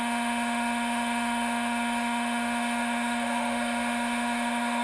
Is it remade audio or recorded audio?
remade